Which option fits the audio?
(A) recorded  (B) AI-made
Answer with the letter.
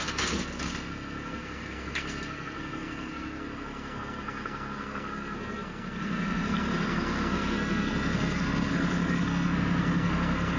B